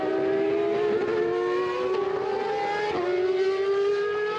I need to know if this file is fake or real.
real